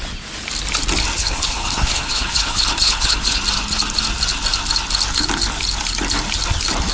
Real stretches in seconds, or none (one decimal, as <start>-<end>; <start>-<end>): 0.0-1.2; 3.4-6.9